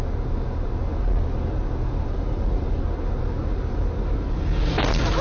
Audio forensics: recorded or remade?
recorded